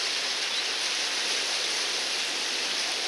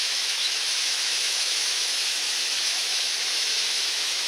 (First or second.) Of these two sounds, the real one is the first